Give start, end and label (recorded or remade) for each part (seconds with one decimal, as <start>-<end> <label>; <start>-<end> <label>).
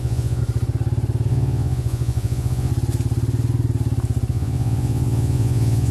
0.0-0.4 remade; 0.4-1.3 recorded; 1.3-2.7 remade; 2.7-4.3 recorded; 4.3-5.9 remade